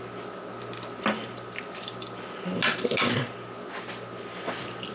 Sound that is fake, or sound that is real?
real